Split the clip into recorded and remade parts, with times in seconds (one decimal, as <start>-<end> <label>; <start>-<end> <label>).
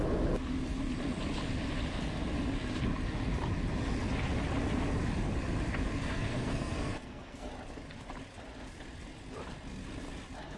0.0-6.0 recorded; 6.0-7.5 remade; 7.5-10.6 recorded